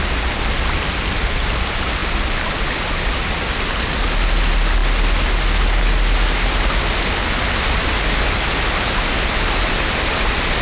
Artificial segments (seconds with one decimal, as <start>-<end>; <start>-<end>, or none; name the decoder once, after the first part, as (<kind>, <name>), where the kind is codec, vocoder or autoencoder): none